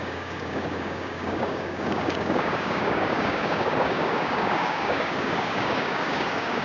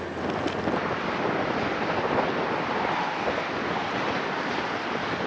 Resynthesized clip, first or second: first